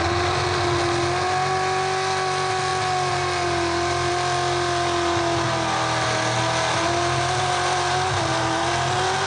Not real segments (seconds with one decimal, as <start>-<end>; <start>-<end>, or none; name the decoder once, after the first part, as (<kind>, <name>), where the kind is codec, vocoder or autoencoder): none